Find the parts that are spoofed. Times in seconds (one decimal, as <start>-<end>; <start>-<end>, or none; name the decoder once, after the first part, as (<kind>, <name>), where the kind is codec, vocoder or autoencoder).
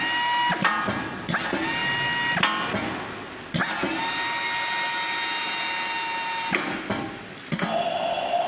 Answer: none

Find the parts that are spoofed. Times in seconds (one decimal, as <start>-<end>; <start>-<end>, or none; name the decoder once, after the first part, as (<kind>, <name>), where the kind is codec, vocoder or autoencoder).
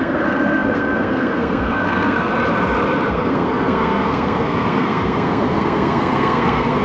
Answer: 0.0-2.3 (codec, SNAC); 3.1-6.8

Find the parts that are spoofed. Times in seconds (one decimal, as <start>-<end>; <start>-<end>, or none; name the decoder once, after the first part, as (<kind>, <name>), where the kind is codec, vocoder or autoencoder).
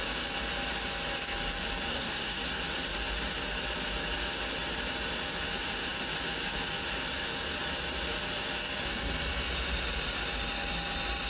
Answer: 1.9-2.4 (codec, SNAC)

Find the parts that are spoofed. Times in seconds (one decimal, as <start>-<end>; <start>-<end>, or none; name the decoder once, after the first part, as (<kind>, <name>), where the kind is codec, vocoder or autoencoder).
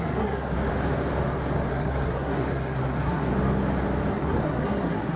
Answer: 0.0-0.7 (codec, SNAC); 1.7-3.3; 4.1-5.2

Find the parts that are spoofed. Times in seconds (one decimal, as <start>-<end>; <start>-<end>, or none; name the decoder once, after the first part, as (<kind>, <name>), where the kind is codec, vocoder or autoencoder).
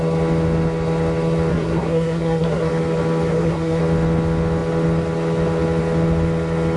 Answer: 1.5-2.7 (codec, SNAC); 3.3-3.8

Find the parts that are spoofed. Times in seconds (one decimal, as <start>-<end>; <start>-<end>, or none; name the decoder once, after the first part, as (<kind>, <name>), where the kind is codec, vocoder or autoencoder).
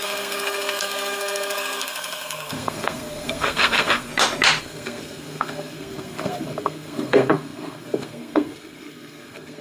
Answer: 0.0-4.1 (codec, SNAC); 4.6-9.6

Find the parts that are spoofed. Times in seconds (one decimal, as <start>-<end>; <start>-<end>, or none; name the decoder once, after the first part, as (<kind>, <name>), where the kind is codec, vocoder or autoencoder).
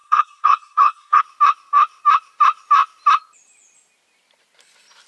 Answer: 0.0-1.2 (codec, SNAC)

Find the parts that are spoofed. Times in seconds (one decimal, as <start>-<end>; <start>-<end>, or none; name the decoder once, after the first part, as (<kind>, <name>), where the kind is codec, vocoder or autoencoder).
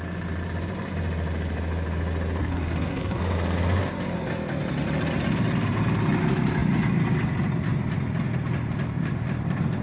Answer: 2.4-3.2 (codec, SNAC)